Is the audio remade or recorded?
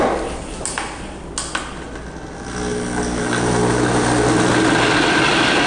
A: recorded